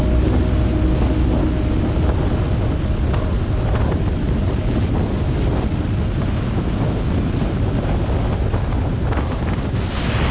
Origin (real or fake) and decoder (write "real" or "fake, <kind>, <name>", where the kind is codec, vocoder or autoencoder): real